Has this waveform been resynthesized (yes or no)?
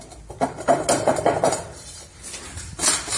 no